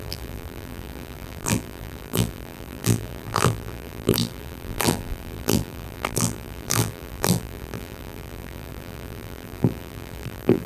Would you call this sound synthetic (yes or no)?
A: yes